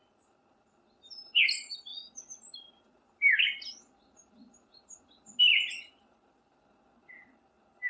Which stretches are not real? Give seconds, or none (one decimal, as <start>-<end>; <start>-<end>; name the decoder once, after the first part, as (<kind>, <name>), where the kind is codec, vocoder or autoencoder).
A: none